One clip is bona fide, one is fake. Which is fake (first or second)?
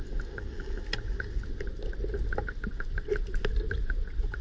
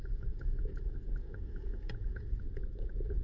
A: second